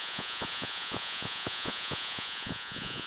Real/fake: fake